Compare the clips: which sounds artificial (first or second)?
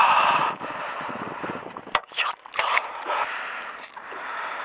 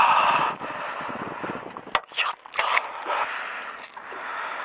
first